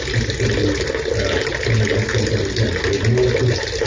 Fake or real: real